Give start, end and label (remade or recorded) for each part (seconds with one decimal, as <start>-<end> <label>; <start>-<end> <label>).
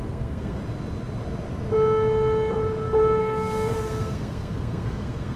0.0-0.6 remade; 0.6-3.2 recorded; 3.2-5.4 remade